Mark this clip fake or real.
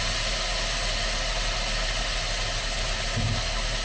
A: real